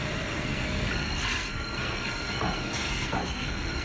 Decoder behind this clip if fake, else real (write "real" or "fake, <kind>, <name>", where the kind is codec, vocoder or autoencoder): fake, codec, SNAC